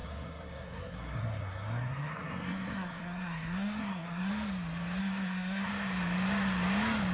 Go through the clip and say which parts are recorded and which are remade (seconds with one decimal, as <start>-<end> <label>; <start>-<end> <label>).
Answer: 0.0-4.3 remade; 4.3-5.0 recorded; 5.0-5.7 remade; 5.7-7.1 recorded